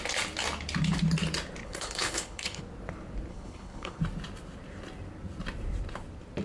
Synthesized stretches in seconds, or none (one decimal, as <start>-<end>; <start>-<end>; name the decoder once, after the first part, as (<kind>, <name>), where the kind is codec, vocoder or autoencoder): 1.6-2.6 (codec, HILCodec); 3.3-4.0